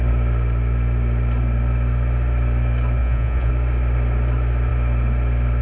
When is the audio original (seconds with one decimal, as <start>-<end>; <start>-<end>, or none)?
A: 0.0-3.0; 3.5-5.6